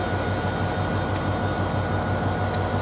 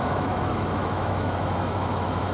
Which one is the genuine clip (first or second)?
first